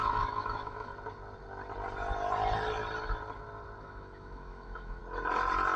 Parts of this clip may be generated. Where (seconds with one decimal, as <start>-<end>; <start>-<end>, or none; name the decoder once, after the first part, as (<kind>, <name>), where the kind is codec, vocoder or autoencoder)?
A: 0.0-0.9 (autoencoder, DAC-VAE); 3.8-5.0